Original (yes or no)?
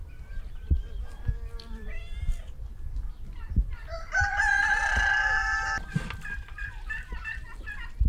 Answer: yes